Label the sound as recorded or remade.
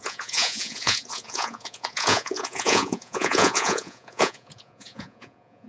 remade